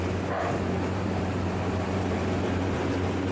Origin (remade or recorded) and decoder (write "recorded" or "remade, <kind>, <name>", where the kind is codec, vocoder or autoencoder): remade, vocoder, BigVGAN v2